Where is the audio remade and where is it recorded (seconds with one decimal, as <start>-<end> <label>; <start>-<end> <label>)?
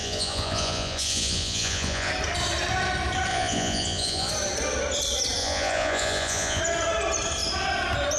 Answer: 0.0-2.1 remade; 2.1-3.3 recorded; 3.3-4.3 remade; 4.3-5.4 recorded; 5.4-6.6 remade; 6.6-8.2 recorded